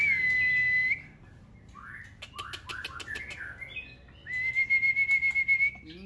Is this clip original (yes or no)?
yes